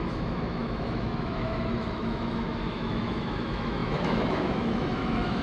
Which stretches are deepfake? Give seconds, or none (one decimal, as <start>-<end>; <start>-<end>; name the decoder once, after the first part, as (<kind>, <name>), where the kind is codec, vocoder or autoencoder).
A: 0.0-5.4 (autoencoder, DAC-VAE)